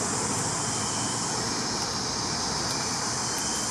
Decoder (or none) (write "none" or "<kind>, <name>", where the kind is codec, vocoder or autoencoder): none